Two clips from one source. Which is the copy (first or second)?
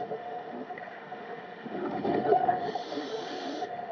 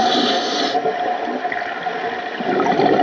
first